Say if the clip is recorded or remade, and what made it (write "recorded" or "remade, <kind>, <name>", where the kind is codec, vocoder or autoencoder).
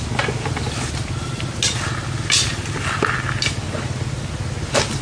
recorded